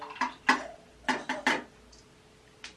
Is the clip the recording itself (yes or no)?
yes